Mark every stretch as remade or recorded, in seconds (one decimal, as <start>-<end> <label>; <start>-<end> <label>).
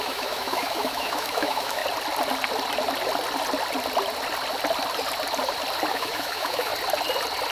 0.0-1.8 remade; 1.8-5.9 recorded; 5.9-6.7 remade; 6.7-7.5 recorded